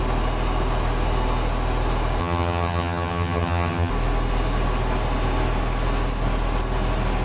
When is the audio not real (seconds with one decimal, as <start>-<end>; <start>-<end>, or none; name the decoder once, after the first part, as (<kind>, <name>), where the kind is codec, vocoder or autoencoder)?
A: 2.2-3.9 (vocoder, HiFi-GAN)